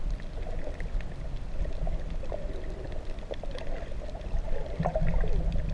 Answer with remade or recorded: recorded